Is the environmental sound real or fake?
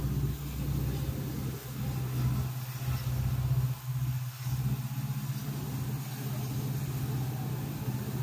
real